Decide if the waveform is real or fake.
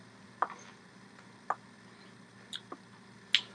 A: real